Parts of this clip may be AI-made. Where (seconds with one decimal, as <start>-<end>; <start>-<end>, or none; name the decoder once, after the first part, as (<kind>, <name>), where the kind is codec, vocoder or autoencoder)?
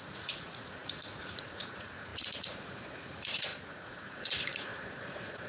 0.0-5.5 (vocoder, Vocos)